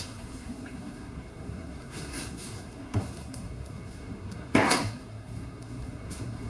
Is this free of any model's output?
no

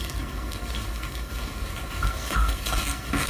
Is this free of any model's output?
no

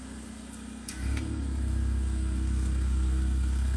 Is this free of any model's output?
no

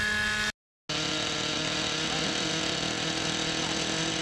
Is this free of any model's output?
yes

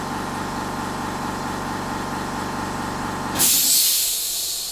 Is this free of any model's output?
yes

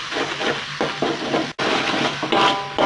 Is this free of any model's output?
yes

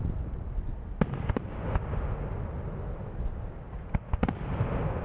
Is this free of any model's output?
yes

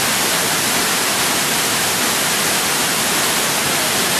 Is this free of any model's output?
yes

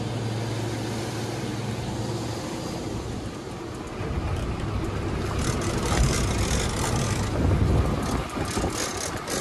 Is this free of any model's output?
yes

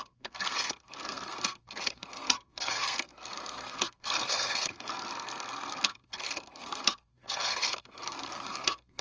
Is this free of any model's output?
no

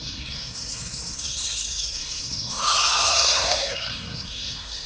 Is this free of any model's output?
no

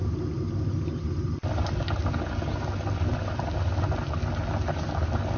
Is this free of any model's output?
yes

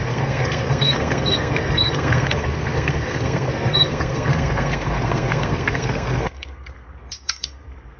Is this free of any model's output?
no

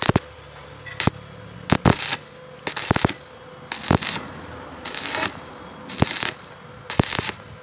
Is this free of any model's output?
yes